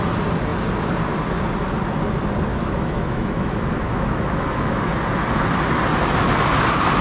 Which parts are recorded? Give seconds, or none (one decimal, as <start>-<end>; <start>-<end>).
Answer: 0.0-2.5; 4.9-7.0